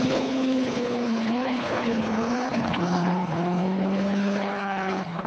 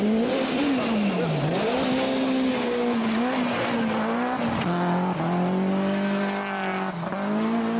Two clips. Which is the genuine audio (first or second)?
second